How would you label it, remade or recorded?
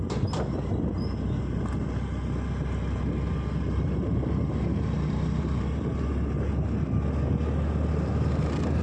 recorded